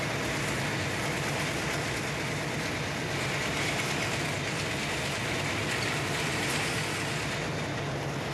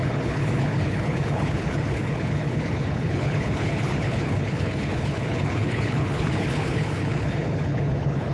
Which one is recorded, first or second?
first